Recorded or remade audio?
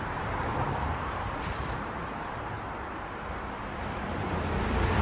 remade